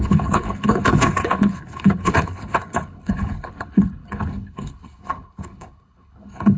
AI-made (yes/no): yes